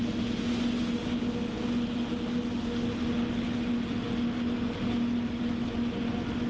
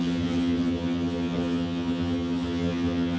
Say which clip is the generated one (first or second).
second